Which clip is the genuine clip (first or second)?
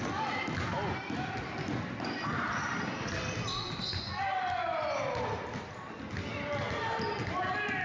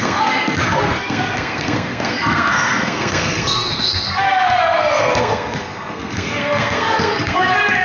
first